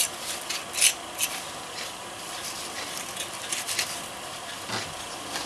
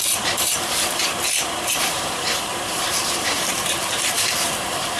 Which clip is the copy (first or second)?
second